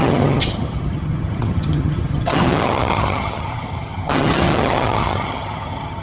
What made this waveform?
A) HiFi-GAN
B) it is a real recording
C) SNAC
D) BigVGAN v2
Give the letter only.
A